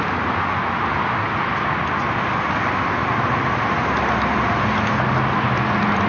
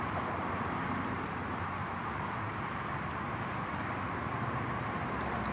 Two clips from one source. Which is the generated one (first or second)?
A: second